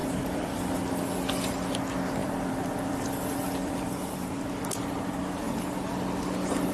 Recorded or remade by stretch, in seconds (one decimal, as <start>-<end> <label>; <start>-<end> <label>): 0.0-1.0 remade; 1.0-2.2 recorded; 2.2-3.0 remade; 3.0-3.6 recorded; 3.6-4.3 remade; 4.3-6.7 recorded